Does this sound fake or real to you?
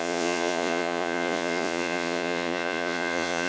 fake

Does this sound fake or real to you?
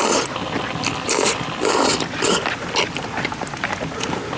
real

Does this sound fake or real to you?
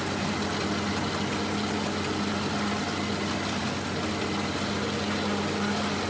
real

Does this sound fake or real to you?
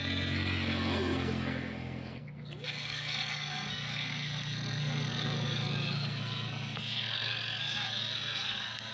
fake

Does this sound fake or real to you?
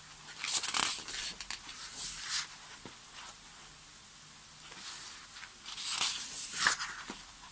real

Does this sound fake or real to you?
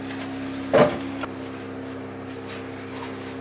real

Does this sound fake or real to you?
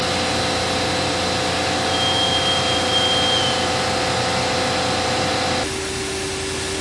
real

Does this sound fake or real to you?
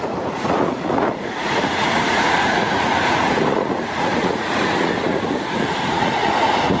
fake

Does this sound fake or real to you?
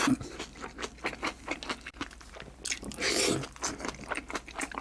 real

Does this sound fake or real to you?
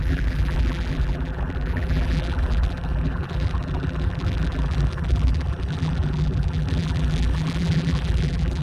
fake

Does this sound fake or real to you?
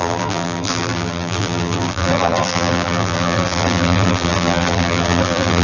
fake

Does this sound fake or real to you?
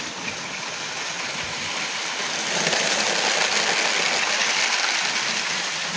real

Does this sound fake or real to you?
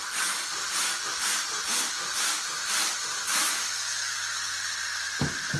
real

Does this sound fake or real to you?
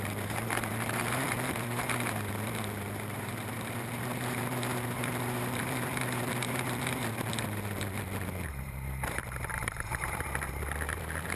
fake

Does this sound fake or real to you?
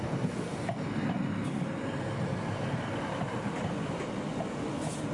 real